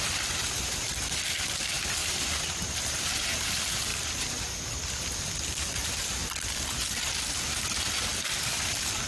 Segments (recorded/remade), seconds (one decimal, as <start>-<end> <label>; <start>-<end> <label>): 0.0-2.0 recorded; 2.0-3.5 remade; 3.5-3.9 recorded; 3.9-4.5 remade; 4.5-9.1 recorded